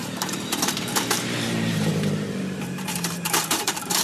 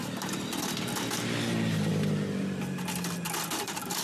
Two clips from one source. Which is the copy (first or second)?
first